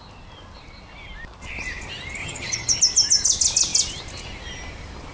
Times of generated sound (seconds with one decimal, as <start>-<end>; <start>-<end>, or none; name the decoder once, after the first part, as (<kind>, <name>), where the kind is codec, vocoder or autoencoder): 2.2-2.8 (vocoder, HiFi-GAN)